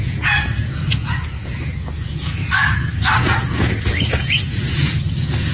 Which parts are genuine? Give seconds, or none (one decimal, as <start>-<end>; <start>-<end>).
2.4-3.2

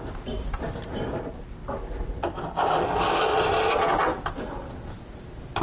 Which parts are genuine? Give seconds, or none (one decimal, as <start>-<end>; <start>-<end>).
0.0-5.6

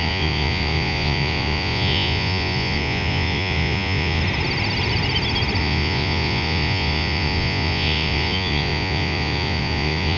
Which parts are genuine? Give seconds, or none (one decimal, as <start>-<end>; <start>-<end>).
4.2-5.6

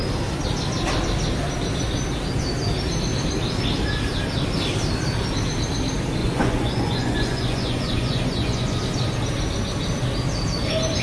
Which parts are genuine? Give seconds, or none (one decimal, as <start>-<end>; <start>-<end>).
0.0-6.2; 8.8-11.0

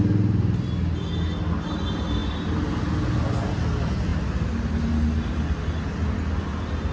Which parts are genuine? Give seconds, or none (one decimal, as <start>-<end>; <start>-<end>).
0.0-6.9